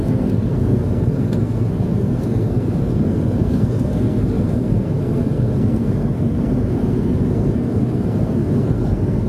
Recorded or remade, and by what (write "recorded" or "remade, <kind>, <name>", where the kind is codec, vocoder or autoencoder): remade, codec, SNAC